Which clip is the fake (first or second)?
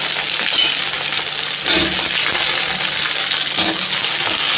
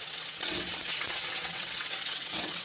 second